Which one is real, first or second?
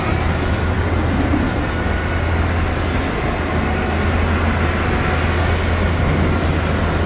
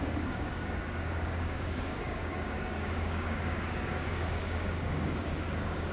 first